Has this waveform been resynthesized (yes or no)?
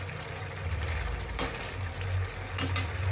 no